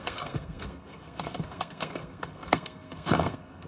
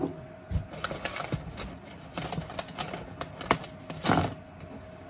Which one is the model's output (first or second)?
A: first